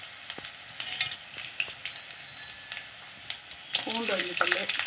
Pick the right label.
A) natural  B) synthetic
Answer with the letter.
A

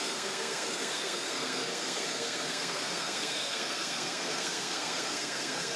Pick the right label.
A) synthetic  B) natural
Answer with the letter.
A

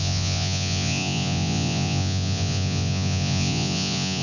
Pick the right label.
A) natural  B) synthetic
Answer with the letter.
B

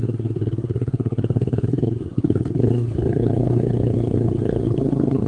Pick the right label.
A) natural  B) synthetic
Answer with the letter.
B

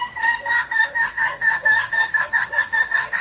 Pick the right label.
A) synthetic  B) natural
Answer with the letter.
A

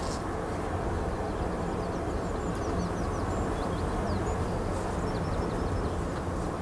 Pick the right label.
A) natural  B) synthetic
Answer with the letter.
A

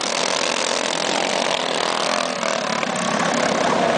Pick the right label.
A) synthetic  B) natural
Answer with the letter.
B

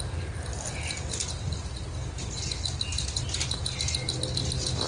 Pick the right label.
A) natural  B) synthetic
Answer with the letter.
A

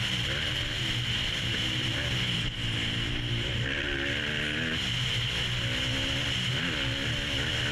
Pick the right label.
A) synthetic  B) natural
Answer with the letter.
B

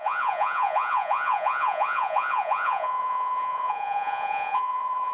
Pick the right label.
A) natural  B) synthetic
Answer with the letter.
B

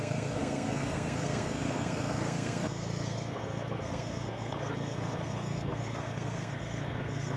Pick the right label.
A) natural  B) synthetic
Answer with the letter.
B